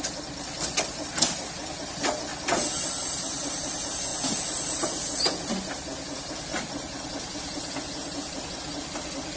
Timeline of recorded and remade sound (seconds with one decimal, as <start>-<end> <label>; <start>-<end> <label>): 0.0-4.1 recorded; 4.1-5.5 remade; 5.5-6.5 recorded; 6.5-8.4 remade; 8.4-9.4 recorded